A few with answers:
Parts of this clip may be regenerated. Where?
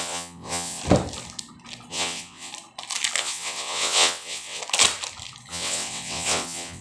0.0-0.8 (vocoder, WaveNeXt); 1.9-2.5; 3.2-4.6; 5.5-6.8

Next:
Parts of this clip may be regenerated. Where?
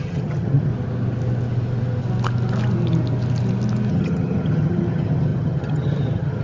0.0-0.7 (vocoder, HiFi-GAN); 3.9-6.4